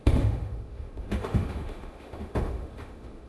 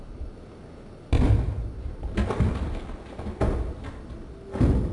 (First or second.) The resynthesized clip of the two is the first